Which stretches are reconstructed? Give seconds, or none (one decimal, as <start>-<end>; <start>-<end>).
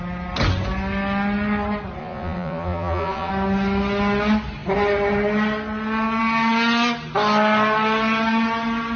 2.0-3.3